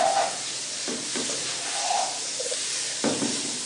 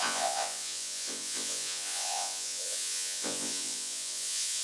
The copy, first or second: second